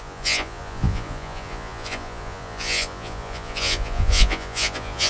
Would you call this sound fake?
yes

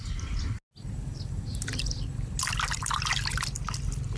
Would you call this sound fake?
no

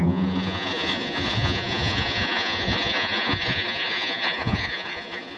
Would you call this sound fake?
yes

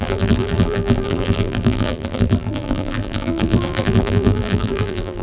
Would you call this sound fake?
yes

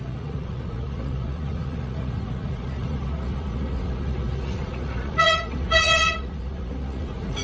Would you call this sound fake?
yes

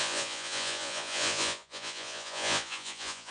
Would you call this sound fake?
yes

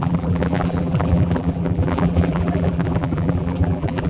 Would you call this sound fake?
yes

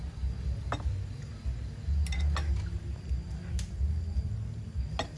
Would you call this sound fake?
no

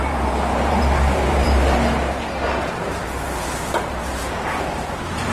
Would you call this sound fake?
yes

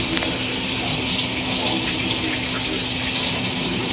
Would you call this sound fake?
no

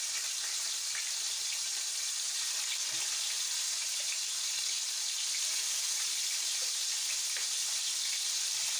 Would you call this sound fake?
no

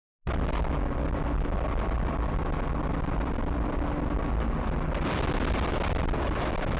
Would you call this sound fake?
no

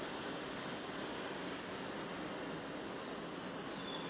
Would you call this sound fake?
no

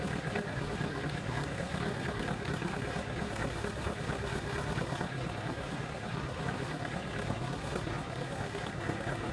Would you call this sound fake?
yes